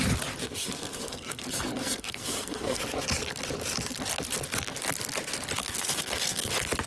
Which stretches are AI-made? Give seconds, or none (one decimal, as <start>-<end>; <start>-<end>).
0.4-2.8; 5.6-6.5